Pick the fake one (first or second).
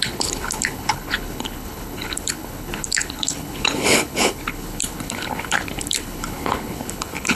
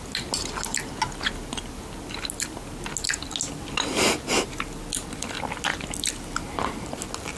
first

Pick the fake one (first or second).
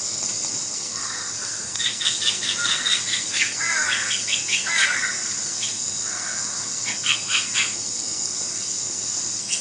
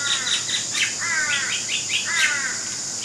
first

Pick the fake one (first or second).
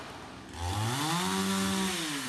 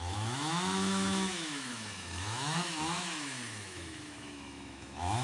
second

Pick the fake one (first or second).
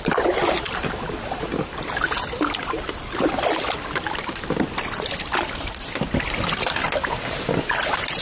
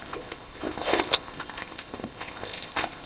second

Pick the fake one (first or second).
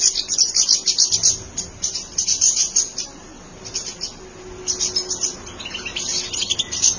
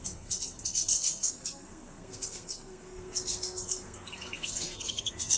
second